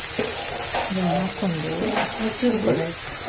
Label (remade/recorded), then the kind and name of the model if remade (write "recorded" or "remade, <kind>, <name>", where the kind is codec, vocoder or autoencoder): recorded